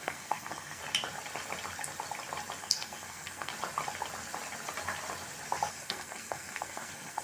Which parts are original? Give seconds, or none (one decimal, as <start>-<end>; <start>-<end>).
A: 0.8-2.6; 3.5-5.7